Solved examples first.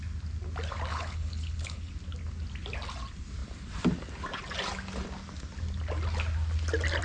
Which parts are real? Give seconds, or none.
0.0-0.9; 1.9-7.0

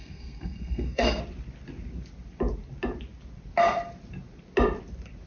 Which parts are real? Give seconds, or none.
1.2-5.3

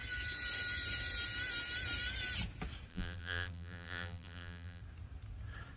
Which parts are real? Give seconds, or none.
0.0-2.9; 4.8-5.8

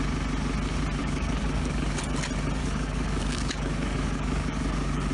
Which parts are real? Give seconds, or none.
0.0-1.0; 2.0-2.6

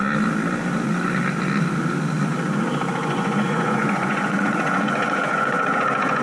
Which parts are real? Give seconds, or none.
0.0-3.0

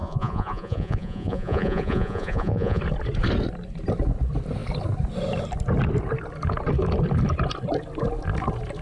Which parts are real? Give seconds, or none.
2.8-8.8

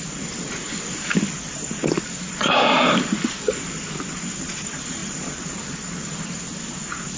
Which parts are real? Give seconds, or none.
none